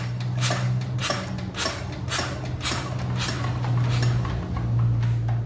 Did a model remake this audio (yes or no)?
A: no